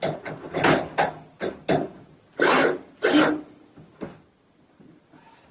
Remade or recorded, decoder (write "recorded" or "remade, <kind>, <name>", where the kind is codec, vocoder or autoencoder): recorded